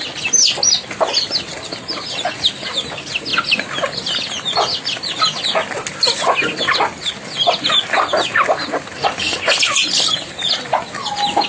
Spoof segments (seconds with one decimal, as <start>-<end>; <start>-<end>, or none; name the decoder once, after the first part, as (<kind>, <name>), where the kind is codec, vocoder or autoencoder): none